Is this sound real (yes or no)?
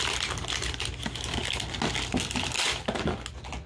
yes